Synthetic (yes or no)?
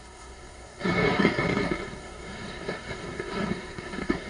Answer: yes